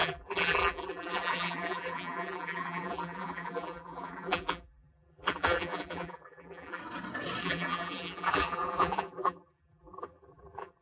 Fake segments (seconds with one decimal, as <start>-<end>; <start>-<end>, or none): 0.0-6.8; 7.4-10.8